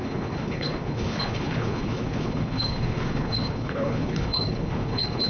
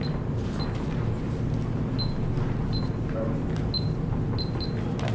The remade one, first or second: first